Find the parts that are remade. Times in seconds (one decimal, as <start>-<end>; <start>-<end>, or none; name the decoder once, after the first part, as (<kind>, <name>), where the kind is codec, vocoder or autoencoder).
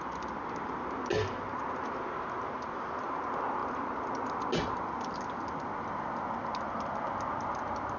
none